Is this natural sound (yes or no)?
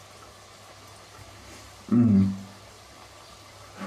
yes